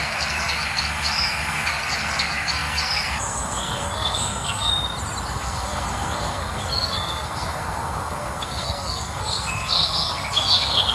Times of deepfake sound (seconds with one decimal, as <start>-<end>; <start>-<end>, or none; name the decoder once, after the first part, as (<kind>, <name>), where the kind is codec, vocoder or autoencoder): 0.0-4.7 (codec, SNAC); 5.3-10.9

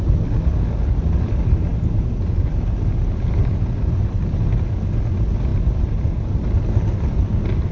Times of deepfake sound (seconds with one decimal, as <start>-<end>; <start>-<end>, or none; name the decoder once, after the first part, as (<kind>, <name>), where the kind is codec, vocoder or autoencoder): none

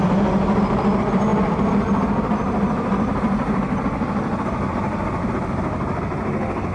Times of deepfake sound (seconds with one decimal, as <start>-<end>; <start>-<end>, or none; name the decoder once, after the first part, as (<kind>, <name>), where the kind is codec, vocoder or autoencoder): none

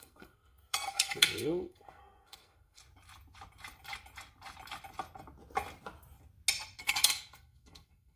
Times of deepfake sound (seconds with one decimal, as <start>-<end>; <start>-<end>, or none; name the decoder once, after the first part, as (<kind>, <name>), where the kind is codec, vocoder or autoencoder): 0.0-2.8 (codec, SNAC); 6.8-8.2

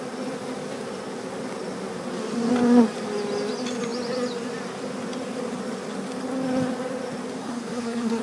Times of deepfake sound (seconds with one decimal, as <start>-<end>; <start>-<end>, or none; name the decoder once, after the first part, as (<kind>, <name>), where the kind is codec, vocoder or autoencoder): 7.4-8.2 (codec, SNAC)

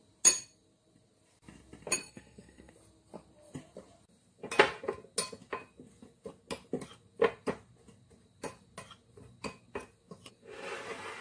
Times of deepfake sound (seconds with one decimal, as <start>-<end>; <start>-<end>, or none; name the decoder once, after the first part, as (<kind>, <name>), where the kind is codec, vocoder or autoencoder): 2.0-2.7 (codec, SNAC)

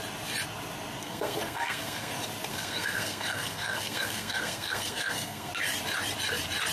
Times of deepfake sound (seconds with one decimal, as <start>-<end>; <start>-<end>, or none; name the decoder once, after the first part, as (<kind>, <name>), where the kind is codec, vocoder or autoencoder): 1.0-2.1 (codec, SNAC); 2.5-5.5